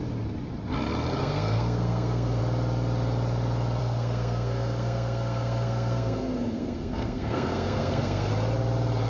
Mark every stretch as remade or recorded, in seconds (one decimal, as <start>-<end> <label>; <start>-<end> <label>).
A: 0.0-1.2 recorded; 1.2-2.4 remade; 2.4-3.8 recorded; 3.8-8.3 remade; 8.3-9.1 recorded